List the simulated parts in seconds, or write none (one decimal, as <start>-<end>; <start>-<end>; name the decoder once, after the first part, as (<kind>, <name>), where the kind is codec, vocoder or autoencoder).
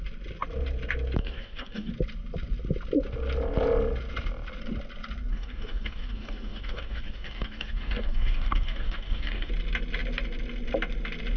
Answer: 1.2-1.9 (codec, DAC); 5.3-9.5